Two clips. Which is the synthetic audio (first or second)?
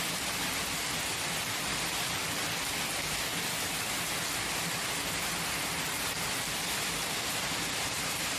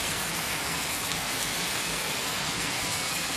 second